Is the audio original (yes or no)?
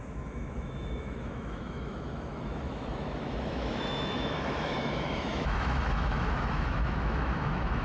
no